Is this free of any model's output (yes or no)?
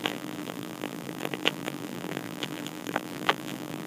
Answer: no